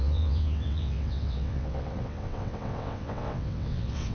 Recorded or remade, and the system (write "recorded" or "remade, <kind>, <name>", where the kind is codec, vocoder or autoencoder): remade, vocoder, WaveNeXt